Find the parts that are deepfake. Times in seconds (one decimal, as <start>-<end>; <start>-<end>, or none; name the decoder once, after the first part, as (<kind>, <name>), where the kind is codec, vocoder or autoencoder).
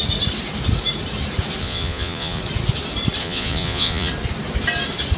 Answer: 1.6-2.4 (vocoder, Vocos); 3.2-4.1